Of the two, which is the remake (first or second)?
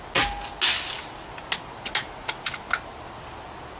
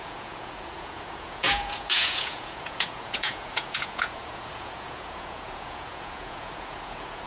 second